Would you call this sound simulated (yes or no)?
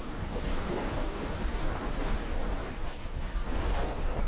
yes